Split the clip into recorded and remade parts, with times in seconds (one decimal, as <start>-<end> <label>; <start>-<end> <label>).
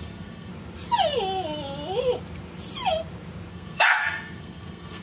0.0-0.5 remade; 0.5-3.5 recorded; 3.5-5.0 remade